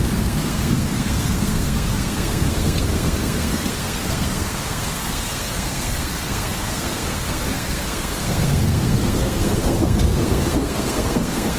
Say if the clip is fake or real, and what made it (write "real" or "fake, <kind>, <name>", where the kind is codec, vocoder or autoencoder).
fake, codec, SNAC